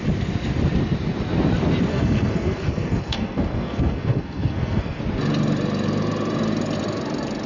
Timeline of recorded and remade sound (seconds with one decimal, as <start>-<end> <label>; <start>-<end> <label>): 0.0-1.9 recorded; 1.9-5.0 remade; 5.0-7.5 recorded